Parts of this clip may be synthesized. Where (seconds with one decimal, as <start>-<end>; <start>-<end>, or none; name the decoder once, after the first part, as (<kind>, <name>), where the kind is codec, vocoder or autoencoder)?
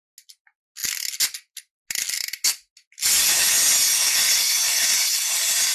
none